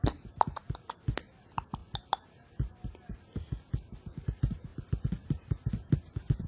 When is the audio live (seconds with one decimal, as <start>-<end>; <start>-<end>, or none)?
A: 0.0-6.5